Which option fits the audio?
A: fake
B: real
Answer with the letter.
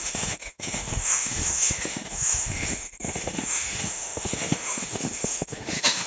A